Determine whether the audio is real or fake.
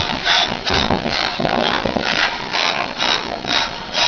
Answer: fake